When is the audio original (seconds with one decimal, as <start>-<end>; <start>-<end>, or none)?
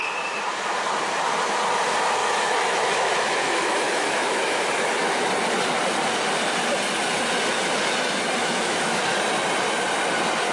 0.0-2.2; 5.3-8.4; 9.0-10.5